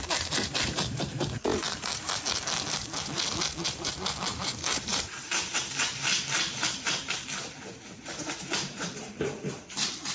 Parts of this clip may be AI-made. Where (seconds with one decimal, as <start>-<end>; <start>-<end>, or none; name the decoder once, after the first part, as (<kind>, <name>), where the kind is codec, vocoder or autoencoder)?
0.0-6.1 (vocoder, BigVGAN v2); 8.0-10.1